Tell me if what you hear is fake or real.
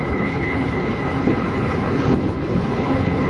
fake